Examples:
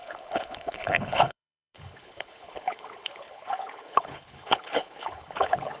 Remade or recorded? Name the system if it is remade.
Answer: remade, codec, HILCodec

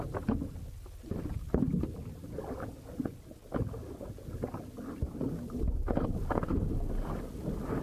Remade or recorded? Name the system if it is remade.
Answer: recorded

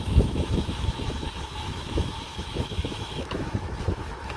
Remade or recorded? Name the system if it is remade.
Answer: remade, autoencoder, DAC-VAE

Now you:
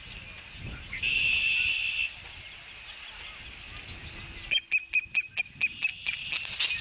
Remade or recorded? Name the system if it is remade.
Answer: recorded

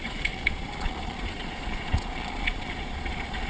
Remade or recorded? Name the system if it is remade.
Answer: remade, vocoder, Vocos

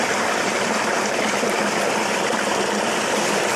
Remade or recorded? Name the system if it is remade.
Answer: remade, vocoder, BigVGAN v2